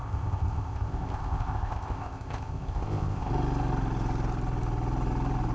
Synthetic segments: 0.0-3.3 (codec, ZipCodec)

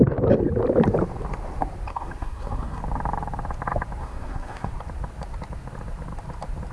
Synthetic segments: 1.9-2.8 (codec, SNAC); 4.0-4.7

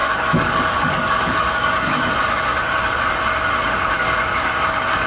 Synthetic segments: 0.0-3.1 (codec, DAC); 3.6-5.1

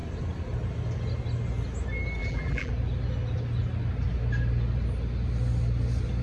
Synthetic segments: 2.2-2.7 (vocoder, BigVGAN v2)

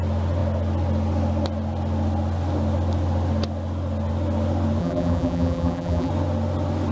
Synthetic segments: 4.8-6.1 (vocoder, BigVGAN v2)

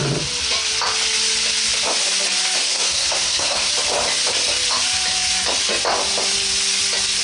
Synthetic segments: 2.7-3.7 (codec, SNAC)

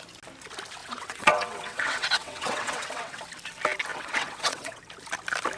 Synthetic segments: 0.8-3.2 (vocoder, WaveNeXt); 3.9-4.8